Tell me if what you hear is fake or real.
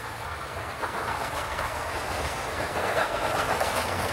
fake